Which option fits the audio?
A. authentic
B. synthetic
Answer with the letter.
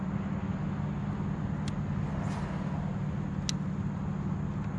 A